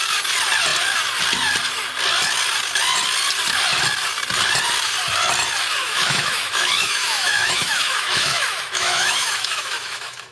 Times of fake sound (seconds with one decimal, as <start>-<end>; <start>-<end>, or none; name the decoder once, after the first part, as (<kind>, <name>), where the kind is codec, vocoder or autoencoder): 5.8-10.3 (autoencoder, DAC-VAE)

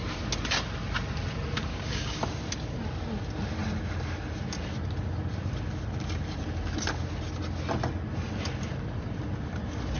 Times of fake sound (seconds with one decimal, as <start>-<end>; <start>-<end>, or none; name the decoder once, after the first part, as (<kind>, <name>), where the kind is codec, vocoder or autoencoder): 1.7-2.2 (codec, DAC)

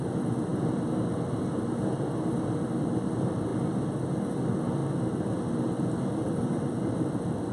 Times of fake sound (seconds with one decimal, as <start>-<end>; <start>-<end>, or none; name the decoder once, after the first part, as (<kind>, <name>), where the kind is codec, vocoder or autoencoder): 0.0-0.5 (vocoder, BigVGAN v2); 2.3-4.8; 6.1-7.5

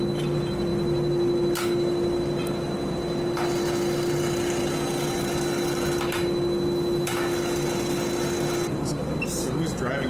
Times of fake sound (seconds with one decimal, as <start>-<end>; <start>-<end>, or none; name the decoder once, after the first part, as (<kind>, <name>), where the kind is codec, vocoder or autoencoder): none